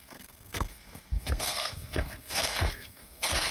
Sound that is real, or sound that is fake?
fake